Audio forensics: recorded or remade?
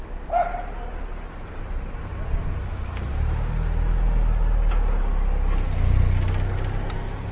recorded